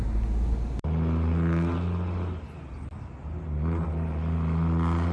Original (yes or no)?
yes